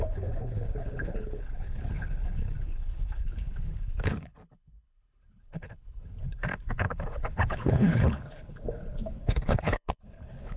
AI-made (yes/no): yes